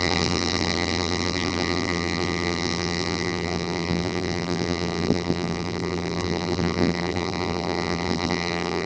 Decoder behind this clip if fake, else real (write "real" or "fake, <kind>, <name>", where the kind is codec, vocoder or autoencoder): fake, vocoder, BigVGAN v2